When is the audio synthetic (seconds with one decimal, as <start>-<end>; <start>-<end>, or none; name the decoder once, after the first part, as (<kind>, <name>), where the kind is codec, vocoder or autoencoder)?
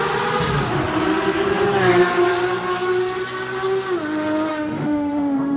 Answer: 4.5-5.6 (autoencoder, DAC-VAE)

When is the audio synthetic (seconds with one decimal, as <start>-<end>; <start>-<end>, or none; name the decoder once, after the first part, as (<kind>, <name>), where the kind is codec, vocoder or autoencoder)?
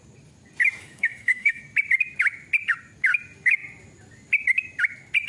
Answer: 0.8-1.6 (autoencoder, DAC-VAE)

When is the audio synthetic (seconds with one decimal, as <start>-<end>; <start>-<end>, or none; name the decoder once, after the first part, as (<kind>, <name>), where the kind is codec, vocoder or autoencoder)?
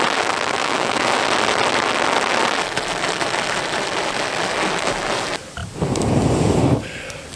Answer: 0.6-1.2 (autoencoder, DAC-VAE)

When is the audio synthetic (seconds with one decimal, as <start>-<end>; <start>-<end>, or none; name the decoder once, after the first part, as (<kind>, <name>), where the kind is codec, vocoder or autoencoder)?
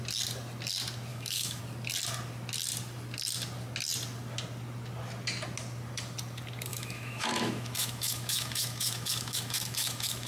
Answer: 1.1-1.6 (autoencoder, DAC-VAE); 6.7-10.3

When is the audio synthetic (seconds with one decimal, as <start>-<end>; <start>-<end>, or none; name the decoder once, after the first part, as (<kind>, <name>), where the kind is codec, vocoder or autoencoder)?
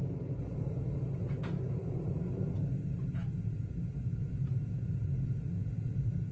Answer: none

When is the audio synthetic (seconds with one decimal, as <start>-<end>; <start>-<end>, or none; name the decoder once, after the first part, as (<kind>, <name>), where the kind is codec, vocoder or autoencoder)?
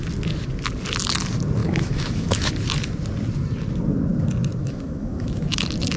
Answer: 1.6-2.5 (autoencoder, DAC-VAE); 4.6-5.5